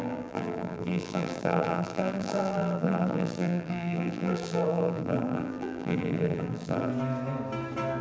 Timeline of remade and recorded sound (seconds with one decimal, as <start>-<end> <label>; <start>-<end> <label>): 0.0-6.9 remade; 6.9-8.0 recorded